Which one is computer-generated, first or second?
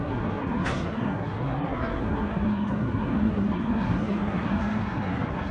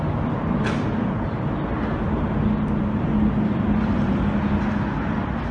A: first